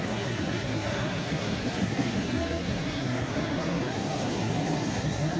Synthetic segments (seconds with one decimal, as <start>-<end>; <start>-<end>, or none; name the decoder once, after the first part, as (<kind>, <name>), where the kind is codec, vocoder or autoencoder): 0.0-5.4 (codec, SNAC)